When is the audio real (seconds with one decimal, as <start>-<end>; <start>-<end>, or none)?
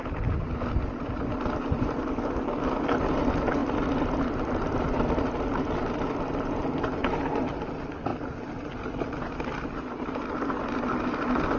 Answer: 0.0-11.6